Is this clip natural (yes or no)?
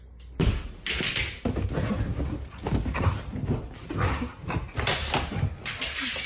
yes